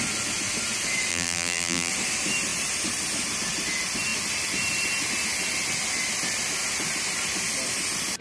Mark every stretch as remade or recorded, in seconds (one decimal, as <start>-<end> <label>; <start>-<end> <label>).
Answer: 0.0-1.1 recorded; 1.1-1.9 remade; 1.9-8.2 recorded